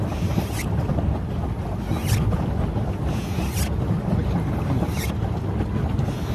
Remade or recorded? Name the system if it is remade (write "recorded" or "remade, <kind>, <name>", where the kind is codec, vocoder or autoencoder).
recorded